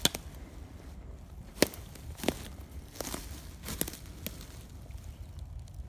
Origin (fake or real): real